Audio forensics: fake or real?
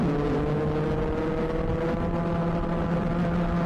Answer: real